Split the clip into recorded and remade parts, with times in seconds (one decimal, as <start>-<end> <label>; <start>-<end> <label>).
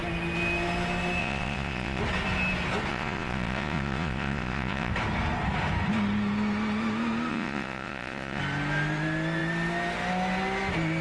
0.0-1.2 recorded; 1.2-2.0 remade; 2.0-2.9 recorded; 2.9-4.9 remade; 4.9-7.3 recorded; 7.3-8.4 remade; 8.4-11.0 recorded